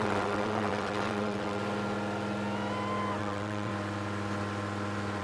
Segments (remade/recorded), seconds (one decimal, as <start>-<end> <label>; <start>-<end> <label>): 0.0-1.6 remade; 1.6-3.2 recorded; 3.2-3.7 remade; 3.7-5.2 recorded